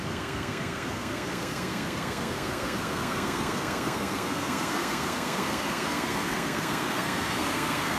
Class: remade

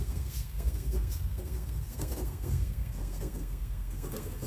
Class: remade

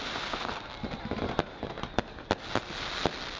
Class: recorded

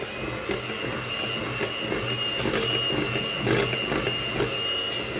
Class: recorded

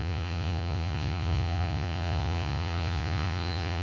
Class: remade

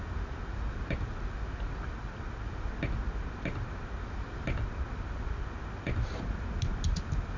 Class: recorded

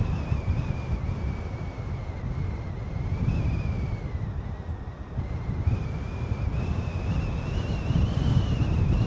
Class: recorded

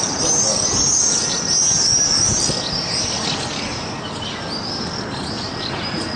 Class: recorded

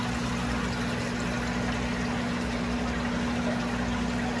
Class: recorded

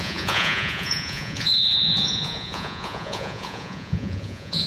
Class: remade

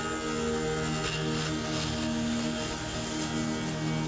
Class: recorded